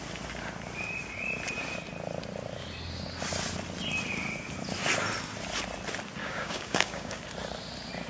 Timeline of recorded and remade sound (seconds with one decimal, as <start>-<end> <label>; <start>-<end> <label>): 0.0-6.2 recorded; 6.2-7.2 remade; 7.2-8.1 recorded